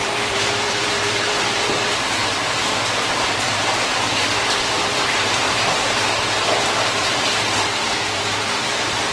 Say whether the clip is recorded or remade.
remade